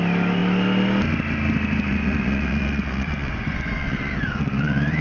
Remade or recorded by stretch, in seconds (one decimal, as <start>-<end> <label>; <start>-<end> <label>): 0.0-1.9 recorded; 1.9-5.0 remade